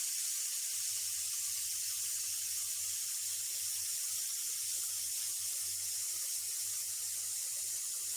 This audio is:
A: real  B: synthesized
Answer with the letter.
A